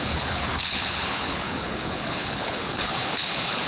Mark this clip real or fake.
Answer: fake